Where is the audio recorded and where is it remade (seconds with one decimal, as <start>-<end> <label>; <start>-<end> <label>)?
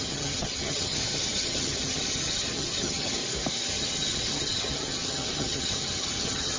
0.0-3.2 remade; 3.2-3.7 recorded; 3.7-6.6 remade